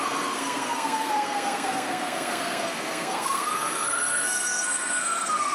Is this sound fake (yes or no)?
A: yes